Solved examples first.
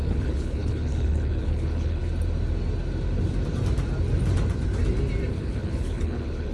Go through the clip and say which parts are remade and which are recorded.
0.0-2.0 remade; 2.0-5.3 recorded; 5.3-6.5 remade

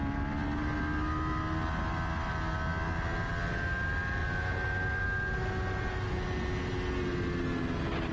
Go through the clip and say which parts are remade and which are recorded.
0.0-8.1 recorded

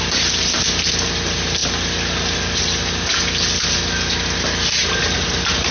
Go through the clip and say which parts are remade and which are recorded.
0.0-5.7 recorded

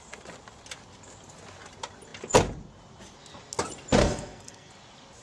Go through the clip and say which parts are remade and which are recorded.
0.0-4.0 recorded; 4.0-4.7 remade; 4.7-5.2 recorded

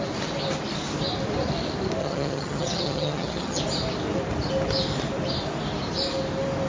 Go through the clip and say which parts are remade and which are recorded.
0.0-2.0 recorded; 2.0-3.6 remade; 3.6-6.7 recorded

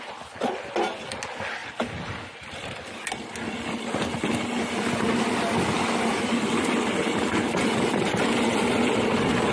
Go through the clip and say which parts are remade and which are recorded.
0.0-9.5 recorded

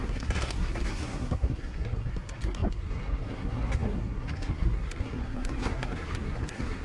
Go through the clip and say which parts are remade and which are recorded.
0.0-6.8 remade